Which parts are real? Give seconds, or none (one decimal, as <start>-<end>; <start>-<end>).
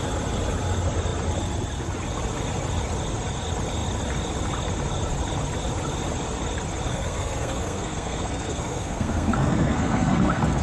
0.0-6.9